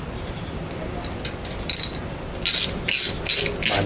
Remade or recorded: recorded